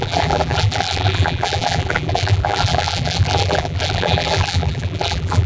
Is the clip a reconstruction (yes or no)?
yes